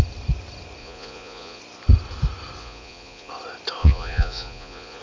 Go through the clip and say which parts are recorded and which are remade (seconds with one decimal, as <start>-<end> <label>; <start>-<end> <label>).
0.0-0.8 recorded; 0.8-1.6 remade; 1.6-2.6 recorded; 2.6-3.3 remade; 3.3-3.8 recorded; 3.8-5.0 remade